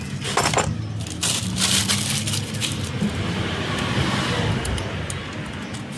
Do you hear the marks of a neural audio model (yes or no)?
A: no